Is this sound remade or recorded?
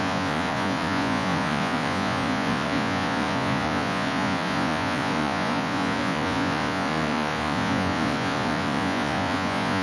remade